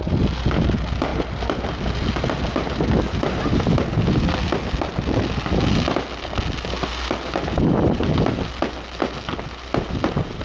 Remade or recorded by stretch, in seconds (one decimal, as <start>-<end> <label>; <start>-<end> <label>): 0.0-10.4 recorded